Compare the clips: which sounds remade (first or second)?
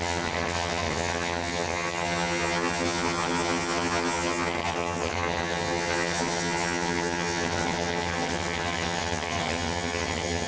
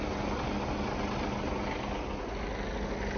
first